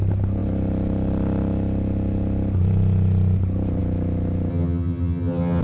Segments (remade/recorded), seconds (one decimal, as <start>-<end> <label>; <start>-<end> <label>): 0.0-4.5 recorded; 4.5-5.6 remade